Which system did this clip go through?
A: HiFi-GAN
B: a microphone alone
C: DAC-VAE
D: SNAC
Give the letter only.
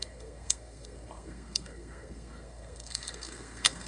D